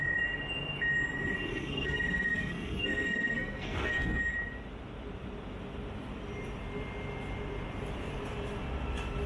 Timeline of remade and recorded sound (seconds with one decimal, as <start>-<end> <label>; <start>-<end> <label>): 0.0-1.5 recorded; 1.5-4.2 remade; 4.2-9.3 recorded